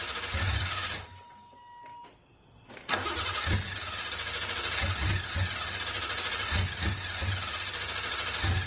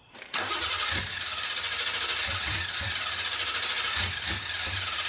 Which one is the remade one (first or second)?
second